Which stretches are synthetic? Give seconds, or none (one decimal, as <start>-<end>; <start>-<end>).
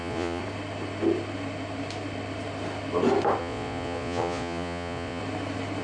0.0-0.4; 3.4-5.2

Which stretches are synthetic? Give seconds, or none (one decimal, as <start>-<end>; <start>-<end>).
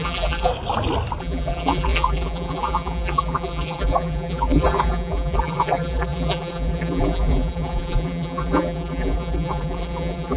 0.0-0.5; 1.2-10.4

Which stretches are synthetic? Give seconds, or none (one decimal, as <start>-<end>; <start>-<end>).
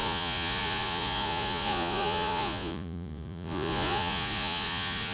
0.0-5.1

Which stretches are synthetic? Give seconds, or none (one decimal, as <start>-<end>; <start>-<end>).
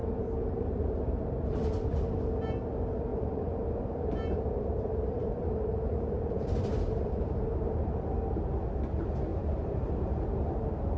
0.0-1.6; 3.1-8.4; 9.3-10.2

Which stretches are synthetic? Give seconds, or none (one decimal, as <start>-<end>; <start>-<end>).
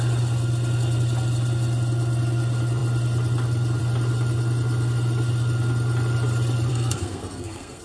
6.7-7.8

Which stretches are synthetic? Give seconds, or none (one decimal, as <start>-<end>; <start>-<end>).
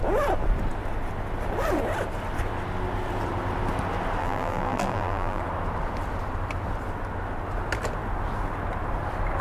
4.2-5.4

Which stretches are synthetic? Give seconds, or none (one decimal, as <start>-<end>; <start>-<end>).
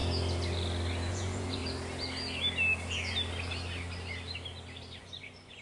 1.1-1.6; 5.0-5.6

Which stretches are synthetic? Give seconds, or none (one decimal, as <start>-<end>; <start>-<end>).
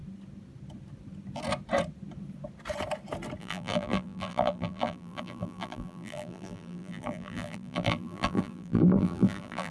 3.4-9.7